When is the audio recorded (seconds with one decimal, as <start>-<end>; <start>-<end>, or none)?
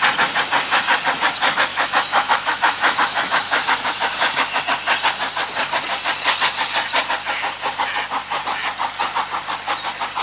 0.0-1.7; 4.6-10.2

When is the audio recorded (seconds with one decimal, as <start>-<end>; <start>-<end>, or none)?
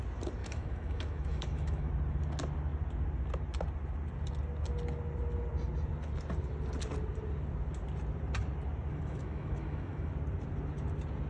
0.0-0.4; 1.9-8.9; 10.1-11.3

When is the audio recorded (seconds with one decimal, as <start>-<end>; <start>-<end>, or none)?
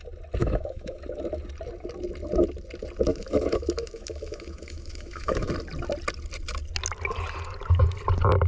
0.0-0.4; 1.0-3.1; 5.5-8.5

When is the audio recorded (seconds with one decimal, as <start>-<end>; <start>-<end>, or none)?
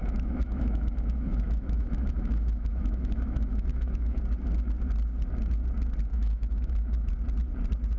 4.2-6.1; 7.1-8.0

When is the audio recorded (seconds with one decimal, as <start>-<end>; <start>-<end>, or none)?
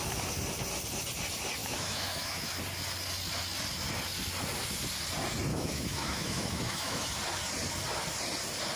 0.0-1.6; 2.6-5.5; 7.1-8.8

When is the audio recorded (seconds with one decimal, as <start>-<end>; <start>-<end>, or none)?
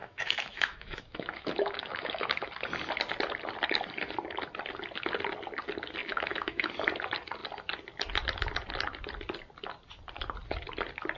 2.5-6.0; 6.7-11.2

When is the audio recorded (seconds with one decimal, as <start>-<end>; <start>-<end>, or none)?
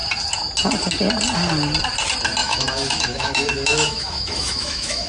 0.0-2.4